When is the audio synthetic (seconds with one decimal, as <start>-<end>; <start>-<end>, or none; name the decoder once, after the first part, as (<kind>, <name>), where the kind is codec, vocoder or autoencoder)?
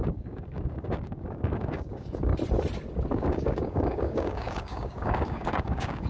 0.0-2.3 (codec, DAC); 3.1-6.1